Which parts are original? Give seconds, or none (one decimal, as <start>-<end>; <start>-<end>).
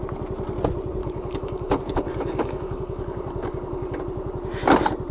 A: 0.0-1.0; 4.0-5.1